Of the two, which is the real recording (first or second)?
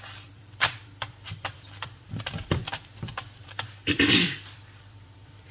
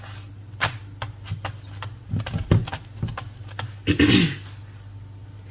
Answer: second